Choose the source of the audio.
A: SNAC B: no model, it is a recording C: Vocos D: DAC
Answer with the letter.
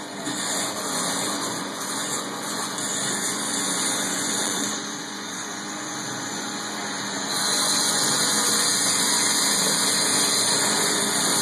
C